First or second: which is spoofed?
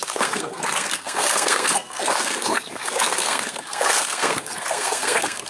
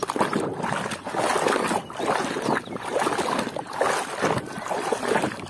first